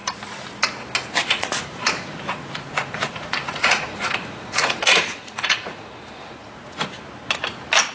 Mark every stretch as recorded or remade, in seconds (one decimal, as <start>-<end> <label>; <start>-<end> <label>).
0.0-1.2 recorded; 1.2-5.9 remade; 5.9-6.4 recorded; 6.4-7.0 remade; 7.0-7.9 recorded